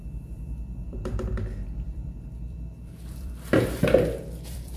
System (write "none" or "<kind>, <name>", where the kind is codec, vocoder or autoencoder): vocoder, BigVGAN v2